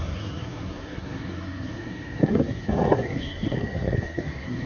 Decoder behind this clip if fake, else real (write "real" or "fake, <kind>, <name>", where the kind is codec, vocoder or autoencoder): fake, codec, SNAC